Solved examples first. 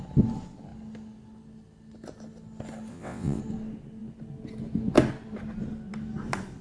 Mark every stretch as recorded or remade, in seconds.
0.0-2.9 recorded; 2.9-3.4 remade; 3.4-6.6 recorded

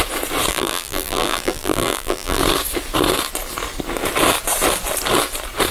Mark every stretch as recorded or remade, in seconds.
0.0-0.5 recorded; 0.5-2.4 remade; 2.4-5.7 recorded

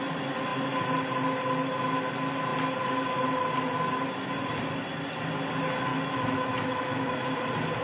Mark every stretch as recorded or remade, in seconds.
0.0-5.9 recorded; 5.9-7.3 remade; 7.3-7.8 recorded

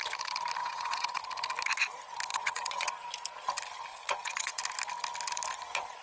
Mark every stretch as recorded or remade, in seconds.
0.0-0.6 recorded; 0.6-1.2 remade; 1.2-2.3 recorded; 2.3-2.9 remade; 2.9-3.9 recorded; 3.9-4.6 remade; 4.6-6.0 recorded

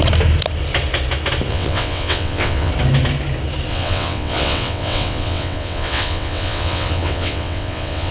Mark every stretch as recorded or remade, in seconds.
0.0-1.5 recorded; 1.5-2.7 remade; 2.7-3.7 recorded; 3.7-8.1 remade